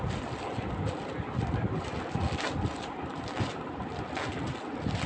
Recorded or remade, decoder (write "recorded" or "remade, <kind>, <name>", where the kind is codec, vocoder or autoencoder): recorded